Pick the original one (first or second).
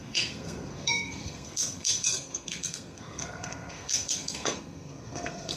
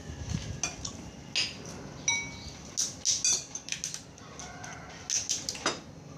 second